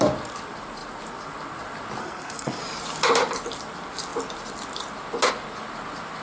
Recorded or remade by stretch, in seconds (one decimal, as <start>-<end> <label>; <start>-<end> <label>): 0.0-2.0 recorded; 2.0-2.6 remade; 2.6-6.2 recorded